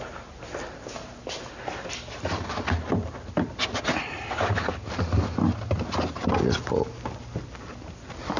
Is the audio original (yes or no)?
yes